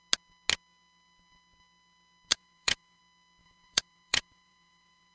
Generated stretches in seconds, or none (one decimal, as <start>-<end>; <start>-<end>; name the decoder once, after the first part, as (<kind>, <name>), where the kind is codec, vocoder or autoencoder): 2.3-3.0 (vocoder, Vocos); 3.4-5.1